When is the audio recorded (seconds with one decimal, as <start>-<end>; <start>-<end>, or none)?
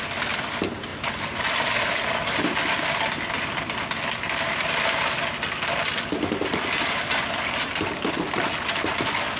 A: 0.0-9.4